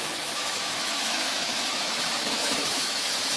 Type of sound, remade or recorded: remade